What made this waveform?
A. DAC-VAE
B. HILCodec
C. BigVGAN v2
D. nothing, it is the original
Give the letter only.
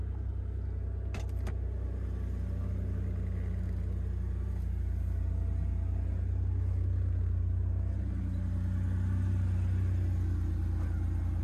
D